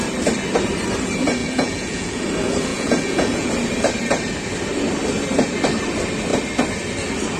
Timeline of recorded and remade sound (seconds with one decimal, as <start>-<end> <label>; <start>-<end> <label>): 0.0-1.4 recorded; 1.4-2.2 remade; 2.2-2.7 recorded; 2.7-3.5 remade; 3.5-7.4 recorded